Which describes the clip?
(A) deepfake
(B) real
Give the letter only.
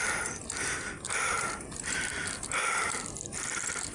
B